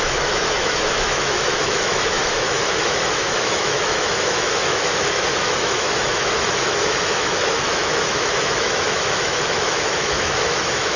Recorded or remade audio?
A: remade